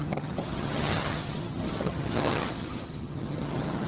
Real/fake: fake